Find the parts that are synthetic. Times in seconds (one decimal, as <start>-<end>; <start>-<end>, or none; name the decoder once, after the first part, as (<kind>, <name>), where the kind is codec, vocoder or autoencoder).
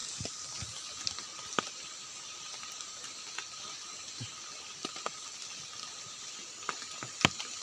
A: none